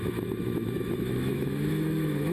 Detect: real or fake fake